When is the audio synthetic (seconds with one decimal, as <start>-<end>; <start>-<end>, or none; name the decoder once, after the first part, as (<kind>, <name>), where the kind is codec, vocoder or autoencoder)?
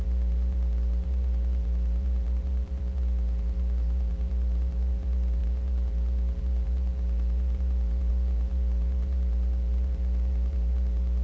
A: 0.0-11.2 (vocoder, BigVGAN v2)